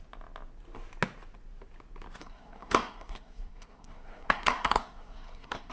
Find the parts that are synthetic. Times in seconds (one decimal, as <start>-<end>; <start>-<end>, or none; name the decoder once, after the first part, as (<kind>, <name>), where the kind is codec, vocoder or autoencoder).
2.2-5.7 (codec, SNAC)